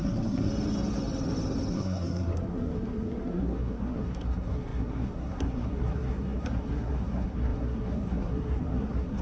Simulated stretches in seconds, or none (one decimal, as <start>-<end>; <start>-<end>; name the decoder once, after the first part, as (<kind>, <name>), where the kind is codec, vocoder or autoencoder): 0.0-0.5 (codec, SNAC); 1.7-9.2